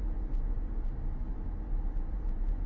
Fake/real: real